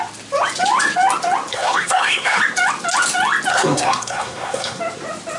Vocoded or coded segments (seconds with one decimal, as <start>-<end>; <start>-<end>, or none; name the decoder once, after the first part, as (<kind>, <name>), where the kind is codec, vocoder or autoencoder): 1.5-2.4 (codec, SNAC); 3.5-4.8